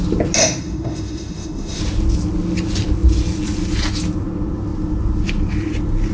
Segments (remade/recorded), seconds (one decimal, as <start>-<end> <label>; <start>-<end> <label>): 0.0-0.4 recorded; 0.4-1.8 remade; 1.8-6.1 recorded